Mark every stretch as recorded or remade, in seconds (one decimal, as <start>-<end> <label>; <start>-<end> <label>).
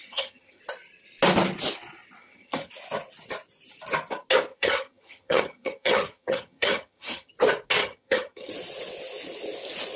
0.0-0.6 remade; 0.6-2.2 recorded; 2.2-2.7 remade; 2.7-4.5 recorded; 4.5-7.3 remade; 7.3-7.8 recorded; 7.8-8.5 remade; 8.5-10.0 recorded